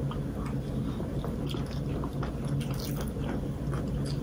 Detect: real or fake real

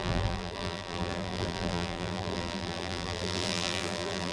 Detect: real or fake fake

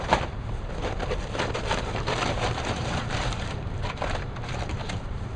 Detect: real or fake fake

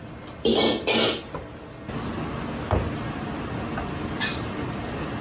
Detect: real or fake real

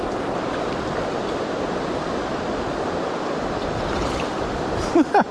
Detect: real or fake real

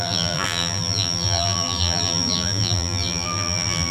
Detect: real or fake fake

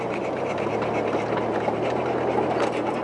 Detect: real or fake real